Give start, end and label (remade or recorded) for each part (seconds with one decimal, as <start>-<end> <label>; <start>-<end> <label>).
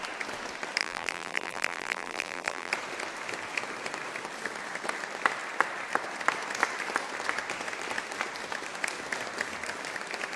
0.0-0.8 recorded; 0.8-2.7 remade; 2.7-10.4 recorded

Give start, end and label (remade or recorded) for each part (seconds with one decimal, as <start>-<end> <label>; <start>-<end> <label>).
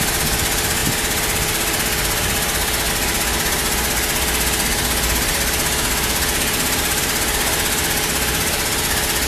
0.0-9.3 recorded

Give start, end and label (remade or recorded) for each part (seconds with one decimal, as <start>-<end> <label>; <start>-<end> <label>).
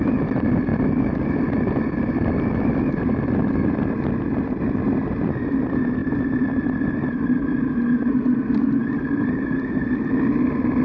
0.0-6.0 recorded; 6.0-6.6 remade; 6.6-8.8 recorded; 8.8-10.1 remade; 10.1-10.8 recorded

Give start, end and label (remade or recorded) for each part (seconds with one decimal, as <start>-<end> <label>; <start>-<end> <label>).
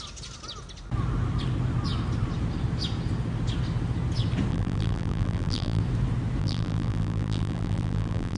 0.0-4.5 recorded; 4.5-5.8 remade; 5.8-6.4 recorded; 6.4-8.4 remade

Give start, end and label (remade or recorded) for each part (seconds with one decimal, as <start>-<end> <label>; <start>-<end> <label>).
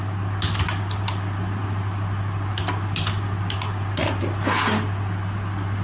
0.0-5.8 recorded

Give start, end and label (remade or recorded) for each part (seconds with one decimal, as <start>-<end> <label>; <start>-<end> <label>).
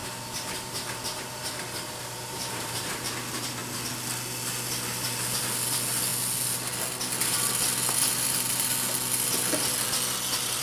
0.0-3.1 remade; 3.1-10.6 recorded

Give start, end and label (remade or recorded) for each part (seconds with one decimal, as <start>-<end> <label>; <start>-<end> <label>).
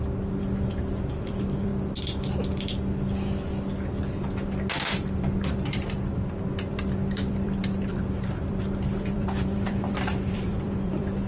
0.0-1.7 remade; 1.7-5.1 recorded; 5.1-6.1 remade; 6.1-6.7 recorded; 6.7-11.3 remade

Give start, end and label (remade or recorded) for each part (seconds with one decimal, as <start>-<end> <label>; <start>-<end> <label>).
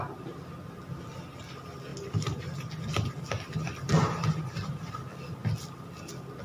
0.0-1.9 recorded; 1.9-4.9 remade; 4.9-5.4 recorded; 5.4-6.0 remade; 6.0-6.4 recorded